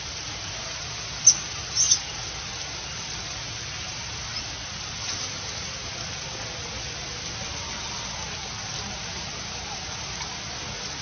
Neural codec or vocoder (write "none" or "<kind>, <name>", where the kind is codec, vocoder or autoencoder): none